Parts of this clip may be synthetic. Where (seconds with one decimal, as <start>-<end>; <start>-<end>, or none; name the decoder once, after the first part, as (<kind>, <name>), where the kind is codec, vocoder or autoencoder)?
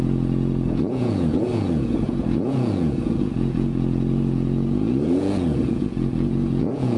0.0-7.0 (vocoder, Vocos)